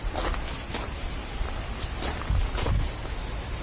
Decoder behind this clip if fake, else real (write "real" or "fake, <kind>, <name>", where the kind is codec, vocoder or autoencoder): real